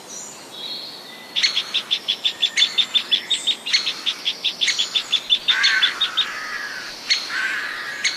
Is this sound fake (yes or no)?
no